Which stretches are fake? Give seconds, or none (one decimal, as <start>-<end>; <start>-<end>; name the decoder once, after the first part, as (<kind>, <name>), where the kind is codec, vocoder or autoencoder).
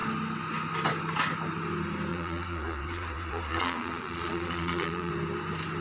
2.1-5.1 (vocoder, Vocos)